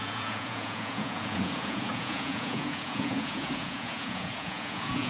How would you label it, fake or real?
fake